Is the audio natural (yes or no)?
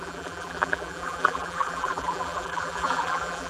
no